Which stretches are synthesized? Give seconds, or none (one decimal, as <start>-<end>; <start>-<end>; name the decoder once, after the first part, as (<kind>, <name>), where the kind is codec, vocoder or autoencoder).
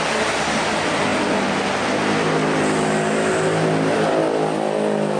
none